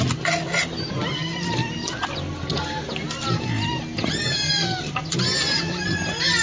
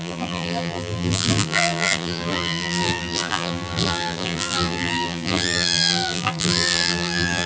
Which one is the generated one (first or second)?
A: second